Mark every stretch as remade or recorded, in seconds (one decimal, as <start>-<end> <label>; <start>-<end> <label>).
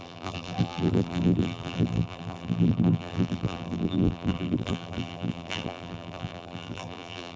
0.0-7.4 remade